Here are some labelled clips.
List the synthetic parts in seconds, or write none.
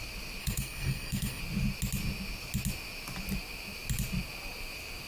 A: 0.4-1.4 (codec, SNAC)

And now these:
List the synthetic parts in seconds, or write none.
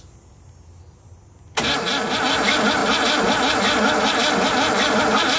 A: none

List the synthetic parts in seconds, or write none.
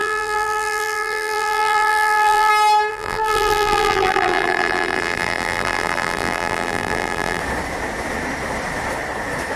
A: 0.0-2.5 (vocoder, BigVGAN v2); 2.9-7.4